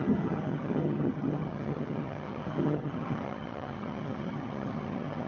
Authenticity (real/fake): fake